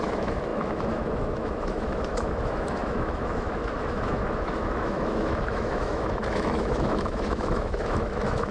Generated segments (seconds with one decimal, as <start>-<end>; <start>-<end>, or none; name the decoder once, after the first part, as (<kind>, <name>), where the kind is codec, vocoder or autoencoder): 0.0-8.5 (autoencoder, DAC-VAE)